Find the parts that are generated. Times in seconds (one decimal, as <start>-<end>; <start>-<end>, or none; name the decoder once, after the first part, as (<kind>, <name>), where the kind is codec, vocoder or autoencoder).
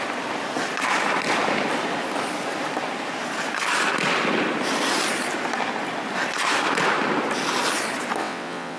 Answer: 8.2-8.8 (vocoder, WaveNeXt)